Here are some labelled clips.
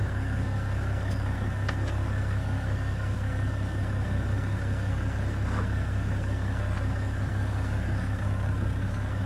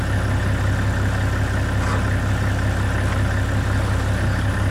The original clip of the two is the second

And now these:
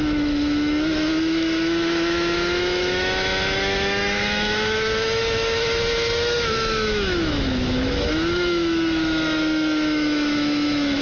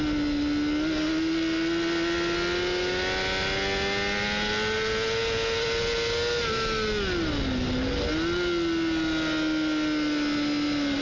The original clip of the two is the second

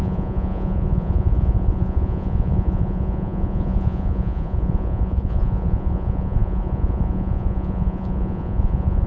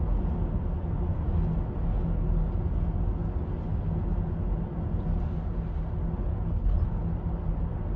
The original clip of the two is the second